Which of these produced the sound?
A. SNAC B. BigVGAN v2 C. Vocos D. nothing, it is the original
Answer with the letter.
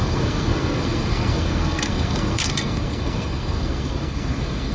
A